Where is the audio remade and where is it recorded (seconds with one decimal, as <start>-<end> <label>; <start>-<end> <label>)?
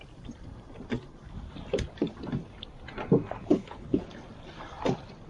0.0-3.5 recorded; 3.5-4.1 remade; 4.1-5.3 recorded